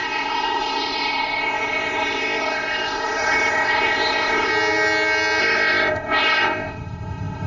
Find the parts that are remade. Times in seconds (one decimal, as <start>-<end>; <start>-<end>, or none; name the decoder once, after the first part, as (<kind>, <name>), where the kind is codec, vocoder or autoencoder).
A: 0.0-4.5 (codec, ZipCodec); 5.4-7.5